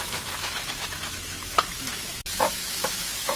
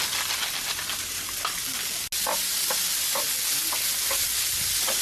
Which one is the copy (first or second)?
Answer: first